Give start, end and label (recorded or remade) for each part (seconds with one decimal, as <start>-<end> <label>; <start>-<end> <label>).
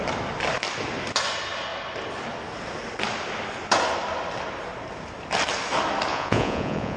0.0-6.1 recorded; 6.1-7.0 remade